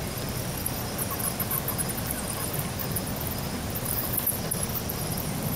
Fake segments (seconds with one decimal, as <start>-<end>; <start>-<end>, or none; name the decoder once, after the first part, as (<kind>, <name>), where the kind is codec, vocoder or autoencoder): none